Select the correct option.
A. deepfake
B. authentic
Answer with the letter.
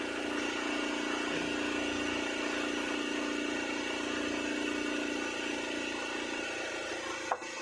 B